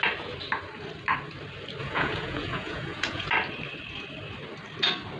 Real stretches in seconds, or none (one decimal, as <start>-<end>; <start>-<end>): 0.0-1.8; 3.3-5.2